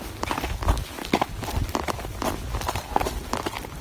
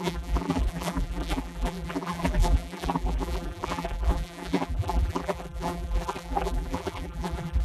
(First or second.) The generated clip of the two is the second